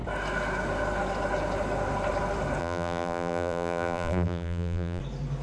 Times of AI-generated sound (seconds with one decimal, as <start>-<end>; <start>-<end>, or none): 2.6-5.0

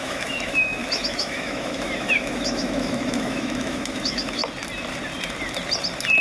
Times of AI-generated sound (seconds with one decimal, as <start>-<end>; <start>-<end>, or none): 0.0-4.4

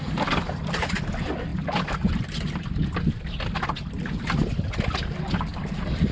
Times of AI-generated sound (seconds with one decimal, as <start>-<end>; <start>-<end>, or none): none